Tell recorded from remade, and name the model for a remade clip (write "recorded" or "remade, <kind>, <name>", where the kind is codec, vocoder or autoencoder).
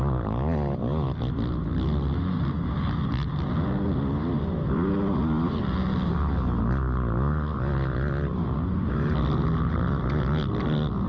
recorded